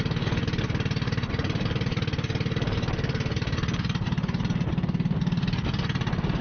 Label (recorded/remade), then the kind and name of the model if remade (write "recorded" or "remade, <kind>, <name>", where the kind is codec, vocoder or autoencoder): recorded